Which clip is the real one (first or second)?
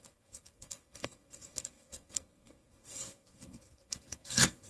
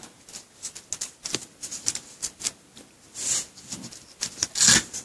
second